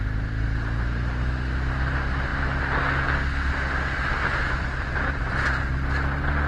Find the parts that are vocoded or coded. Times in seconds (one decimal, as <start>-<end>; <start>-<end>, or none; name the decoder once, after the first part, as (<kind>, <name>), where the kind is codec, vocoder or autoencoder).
none